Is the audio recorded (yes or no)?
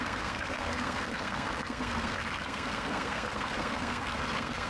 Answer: no